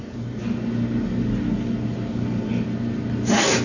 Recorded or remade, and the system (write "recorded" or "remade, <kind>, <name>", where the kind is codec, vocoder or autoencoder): recorded